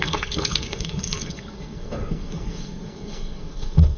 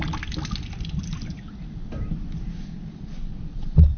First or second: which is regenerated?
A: first